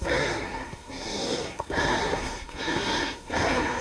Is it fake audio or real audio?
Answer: fake